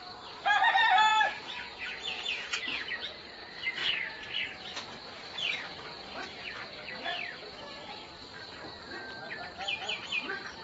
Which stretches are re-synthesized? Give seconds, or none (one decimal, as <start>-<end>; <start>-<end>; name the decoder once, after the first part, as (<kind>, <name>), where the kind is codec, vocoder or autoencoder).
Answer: 1.1-3.2 (vocoder, Vocos)